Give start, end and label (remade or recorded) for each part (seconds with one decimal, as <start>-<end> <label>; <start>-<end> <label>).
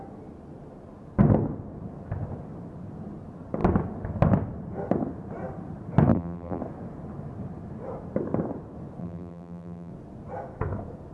0.0-6.1 recorded; 6.1-6.6 remade; 6.6-9.0 recorded; 9.0-9.9 remade; 9.9-11.1 recorded